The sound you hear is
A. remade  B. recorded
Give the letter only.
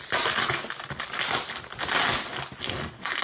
B